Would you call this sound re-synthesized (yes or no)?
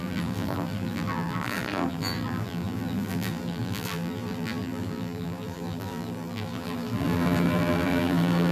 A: yes